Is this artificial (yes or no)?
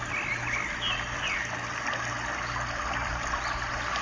no